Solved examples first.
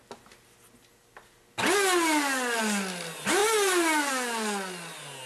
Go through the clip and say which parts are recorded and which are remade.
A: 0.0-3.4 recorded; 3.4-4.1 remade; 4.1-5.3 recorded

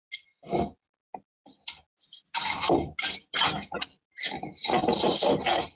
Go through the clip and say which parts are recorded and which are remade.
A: 0.0-5.8 recorded

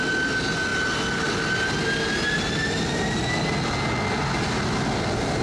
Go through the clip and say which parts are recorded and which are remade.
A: 0.0-5.4 recorded

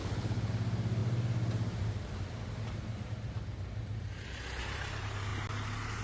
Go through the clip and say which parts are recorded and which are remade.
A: 0.0-0.5 remade; 0.5-6.0 recorded